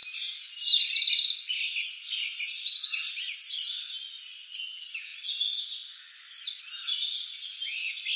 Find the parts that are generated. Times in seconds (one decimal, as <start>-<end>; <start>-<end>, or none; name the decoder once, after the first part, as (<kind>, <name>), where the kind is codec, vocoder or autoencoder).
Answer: none